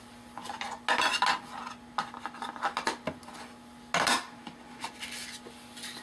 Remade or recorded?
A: recorded